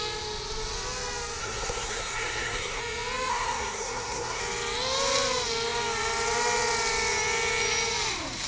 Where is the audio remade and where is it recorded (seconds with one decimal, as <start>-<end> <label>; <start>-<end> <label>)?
0.0-1.4 recorded; 1.4-2.8 remade; 2.8-3.3 recorded; 3.3-4.4 remade; 4.4-8.5 recorded

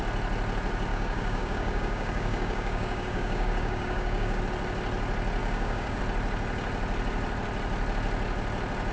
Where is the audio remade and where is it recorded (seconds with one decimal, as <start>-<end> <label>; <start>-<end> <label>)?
0.0-0.9 recorded; 0.9-4.4 remade; 4.4-5.4 recorded; 5.4-6.0 remade; 6.0-8.9 recorded

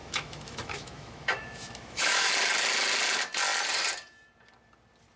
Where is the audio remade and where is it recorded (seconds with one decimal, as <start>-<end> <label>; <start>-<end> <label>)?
0.0-2.3 remade; 2.3-5.2 recorded

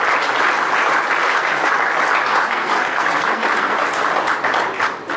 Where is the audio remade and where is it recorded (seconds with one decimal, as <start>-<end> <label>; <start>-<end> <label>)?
0.0-1.2 recorded; 1.2-1.7 remade; 1.7-2.3 recorded; 2.3-4.1 remade; 4.1-5.2 recorded

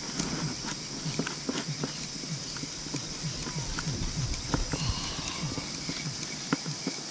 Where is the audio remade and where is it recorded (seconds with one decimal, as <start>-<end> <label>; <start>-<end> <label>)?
0.0-7.1 recorded

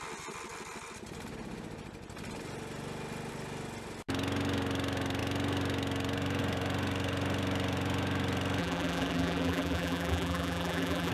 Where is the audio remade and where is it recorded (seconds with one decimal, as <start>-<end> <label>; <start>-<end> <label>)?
0.0-8.6 recorded; 8.6-11.1 remade

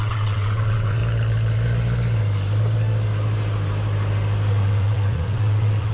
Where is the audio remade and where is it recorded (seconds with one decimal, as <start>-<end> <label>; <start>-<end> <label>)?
0.0-1.0 remade; 1.0-4.5 recorded; 4.5-5.9 remade